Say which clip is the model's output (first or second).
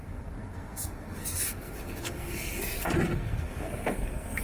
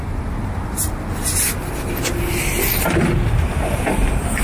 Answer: first